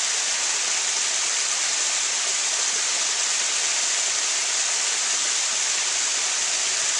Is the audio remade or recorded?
recorded